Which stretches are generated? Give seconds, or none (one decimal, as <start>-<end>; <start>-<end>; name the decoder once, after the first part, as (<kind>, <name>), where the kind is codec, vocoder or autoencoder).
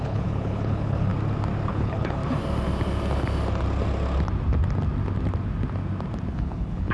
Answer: 0.0-1.1 (codec, HILCodec); 1.7-2.2; 6.3-6.9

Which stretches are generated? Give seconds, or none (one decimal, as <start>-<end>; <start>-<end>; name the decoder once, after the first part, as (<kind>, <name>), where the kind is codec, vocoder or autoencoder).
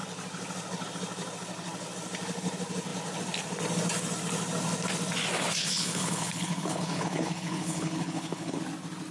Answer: 5.6-8.6 (codec, HILCodec)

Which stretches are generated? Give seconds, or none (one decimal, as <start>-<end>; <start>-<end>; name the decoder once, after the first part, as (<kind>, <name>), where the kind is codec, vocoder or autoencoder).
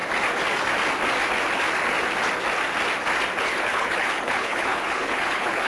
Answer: 3.4-5.7 (codec, HILCodec)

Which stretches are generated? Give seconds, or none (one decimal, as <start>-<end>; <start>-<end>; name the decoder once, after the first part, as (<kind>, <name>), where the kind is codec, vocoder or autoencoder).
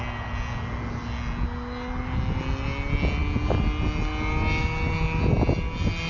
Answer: none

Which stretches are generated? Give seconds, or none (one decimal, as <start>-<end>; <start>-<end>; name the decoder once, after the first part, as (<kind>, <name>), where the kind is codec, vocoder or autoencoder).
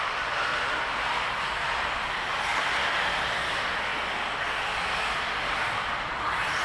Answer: none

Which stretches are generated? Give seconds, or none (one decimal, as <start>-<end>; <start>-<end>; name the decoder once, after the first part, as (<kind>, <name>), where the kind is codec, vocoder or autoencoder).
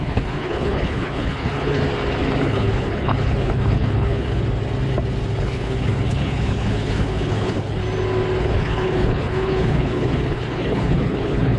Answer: 0.0-1.8 (codec, HILCodec); 2.4-4.4; 5.4-7.8; 8.4-11.6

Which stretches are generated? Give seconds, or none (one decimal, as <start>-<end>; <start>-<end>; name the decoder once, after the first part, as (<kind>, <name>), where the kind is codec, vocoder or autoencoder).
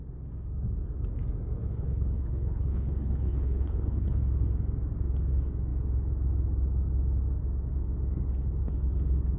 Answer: 1.6-4.2 (codec, HILCodec)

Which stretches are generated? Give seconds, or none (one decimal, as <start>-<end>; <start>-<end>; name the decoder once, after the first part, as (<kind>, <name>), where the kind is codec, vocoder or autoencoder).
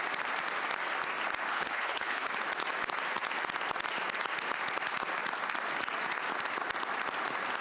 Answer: 1.5-2.3 (codec, HILCodec)